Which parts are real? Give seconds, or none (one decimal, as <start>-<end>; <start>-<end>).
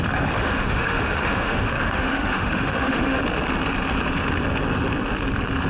0.0-0.4; 3.2-5.7